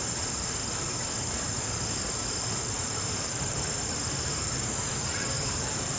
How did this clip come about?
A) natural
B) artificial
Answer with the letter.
B